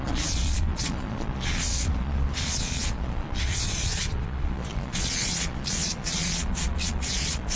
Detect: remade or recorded remade